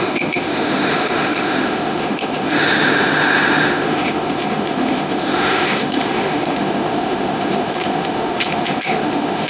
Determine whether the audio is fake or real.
fake